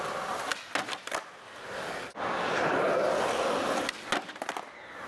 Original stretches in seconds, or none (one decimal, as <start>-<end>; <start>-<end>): 0.0-5.1